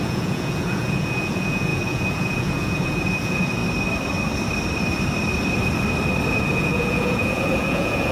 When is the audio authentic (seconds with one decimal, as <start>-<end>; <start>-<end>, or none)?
3.6-6.3